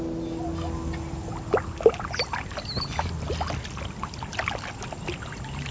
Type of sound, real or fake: real